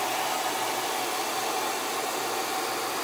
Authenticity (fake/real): real